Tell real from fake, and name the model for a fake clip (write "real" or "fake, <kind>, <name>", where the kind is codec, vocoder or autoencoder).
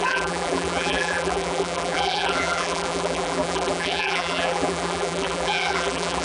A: fake, vocoder, BigVGAN v2